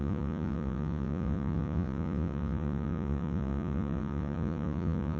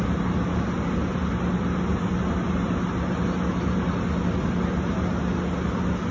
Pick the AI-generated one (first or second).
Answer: first